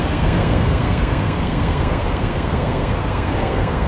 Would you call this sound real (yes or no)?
no